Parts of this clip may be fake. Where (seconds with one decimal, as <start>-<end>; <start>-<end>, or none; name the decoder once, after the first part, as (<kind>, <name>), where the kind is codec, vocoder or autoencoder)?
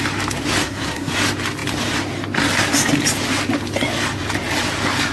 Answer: 0.6-1.1 (codec, SNAC)